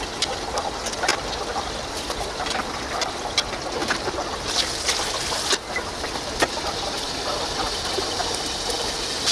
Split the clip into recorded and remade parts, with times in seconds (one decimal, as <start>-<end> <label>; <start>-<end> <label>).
0.0-1.1 recorded; 1.1-1.9 remade; 1.9-3.8 recorded; 3.8-8.3 remade; 8.3-9.3 recorded

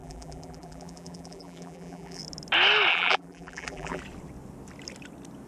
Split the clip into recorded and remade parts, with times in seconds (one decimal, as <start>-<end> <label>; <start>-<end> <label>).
0.0-2.2 remade; 2.2-2.9 recorded; 2.9-4.0 remade; 4.0-5.5 recorded

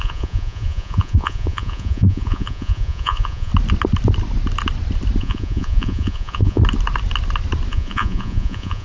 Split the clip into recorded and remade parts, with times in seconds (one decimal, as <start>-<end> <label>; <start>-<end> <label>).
0.0-3.5 remade; 3.5-5.2 recorded; 5.2-6.6 remade; 6.6-7.7 recorded; 7.7-8.8 remade

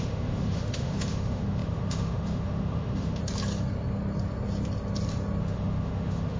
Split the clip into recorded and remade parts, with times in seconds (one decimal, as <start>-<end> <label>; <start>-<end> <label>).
0.0-3.2 remade; 3.2-5.4 recorded; 5.4-6.4 remade

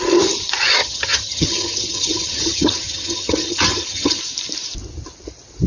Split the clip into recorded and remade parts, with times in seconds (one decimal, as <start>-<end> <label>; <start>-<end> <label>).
0.0-0.8 recorded; 0.8-4.2 remade; 4.2-5.7 recorded

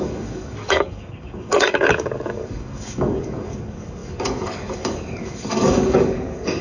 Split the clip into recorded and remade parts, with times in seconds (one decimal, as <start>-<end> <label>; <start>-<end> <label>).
0.0-6.6 remade

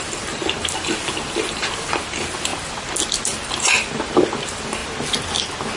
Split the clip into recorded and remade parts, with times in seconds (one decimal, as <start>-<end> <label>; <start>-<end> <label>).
0.0-2.5 remade; 2.5-3.6 recorded; 3.6-4.8 remade; 4.8-5.8 recorded